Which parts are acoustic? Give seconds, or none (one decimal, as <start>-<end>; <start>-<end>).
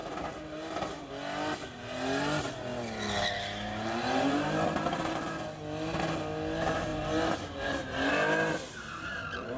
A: 1.1-6.9; 8.1-9.6